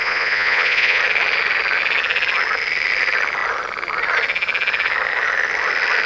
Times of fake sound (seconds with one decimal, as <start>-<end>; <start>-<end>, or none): 0.0-1.0